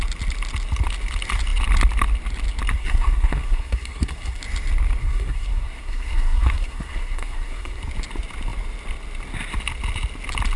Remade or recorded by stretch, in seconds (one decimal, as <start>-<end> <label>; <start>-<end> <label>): 0.0-2.7 recorded; 2.7-4.4 remade; 4.4-5.0 recorded; 5.0-7.8 remade; 7.8-10.6 recorded